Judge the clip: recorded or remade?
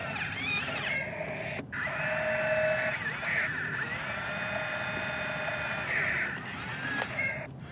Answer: recorded